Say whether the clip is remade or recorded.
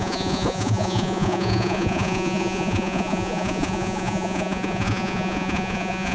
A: remade